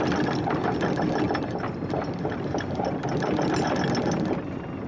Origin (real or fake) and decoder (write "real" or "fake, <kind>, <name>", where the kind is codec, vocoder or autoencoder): real